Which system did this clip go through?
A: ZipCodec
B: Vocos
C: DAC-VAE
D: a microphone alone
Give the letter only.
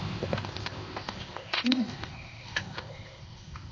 A